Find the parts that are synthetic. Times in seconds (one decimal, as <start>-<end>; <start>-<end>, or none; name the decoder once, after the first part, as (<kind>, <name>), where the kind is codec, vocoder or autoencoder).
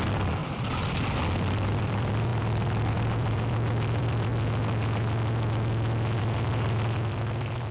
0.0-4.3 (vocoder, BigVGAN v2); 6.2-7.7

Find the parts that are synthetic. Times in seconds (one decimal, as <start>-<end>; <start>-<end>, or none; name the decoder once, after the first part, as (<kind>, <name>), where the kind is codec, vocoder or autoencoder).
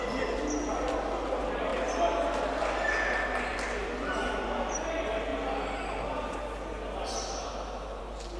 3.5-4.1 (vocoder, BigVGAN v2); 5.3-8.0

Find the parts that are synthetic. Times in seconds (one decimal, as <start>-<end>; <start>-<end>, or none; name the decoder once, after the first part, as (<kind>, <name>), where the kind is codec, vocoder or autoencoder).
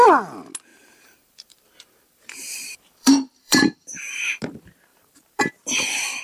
0.7-4.4 (vocoder, BigVGAN v2); 4.9-5.5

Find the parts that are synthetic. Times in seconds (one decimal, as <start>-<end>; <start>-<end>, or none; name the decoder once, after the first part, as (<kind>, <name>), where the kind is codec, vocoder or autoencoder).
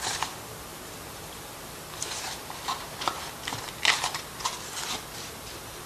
0.7-3.0 (vocoder, BigVGAN v2)